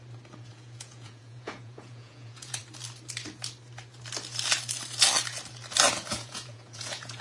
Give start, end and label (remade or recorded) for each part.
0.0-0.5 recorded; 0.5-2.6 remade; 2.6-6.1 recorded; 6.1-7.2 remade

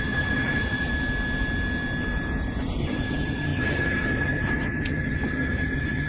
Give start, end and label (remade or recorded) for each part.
0.0-0.9 remade; 0.9-2.8 recorded; 2.8-6.1 remade

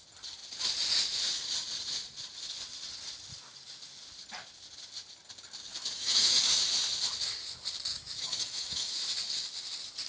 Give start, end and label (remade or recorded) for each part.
0.0-5.7 recorded; 5.7-6.4 remade; 6.4-7.9 recorded; 7.9-8.9 remade; 8.9-10.1 recorded

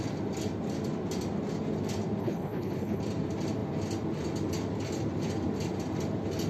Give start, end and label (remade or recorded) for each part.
0.0-2.2 recorded; 2.2-3.0 remade; 3.0-6.5 recorded

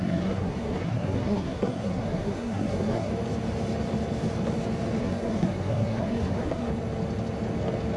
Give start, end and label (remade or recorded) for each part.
0.0-3.1 remade; 3.1-5.0 recorded; 5.0-6.7 remade; 6.7-8.0 recorded